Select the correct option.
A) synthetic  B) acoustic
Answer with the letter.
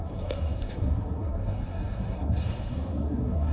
A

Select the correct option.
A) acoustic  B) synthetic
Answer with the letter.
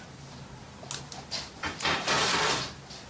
A